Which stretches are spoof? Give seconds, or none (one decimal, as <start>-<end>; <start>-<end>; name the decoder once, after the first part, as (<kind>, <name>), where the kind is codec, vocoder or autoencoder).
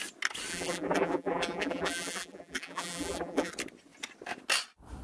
0.5-3.5 (vocoder, BigVGAN v2)